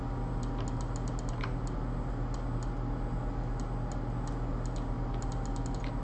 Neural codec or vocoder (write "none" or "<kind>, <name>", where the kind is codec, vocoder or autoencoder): none